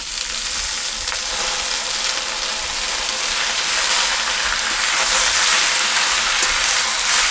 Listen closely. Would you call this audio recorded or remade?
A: recorded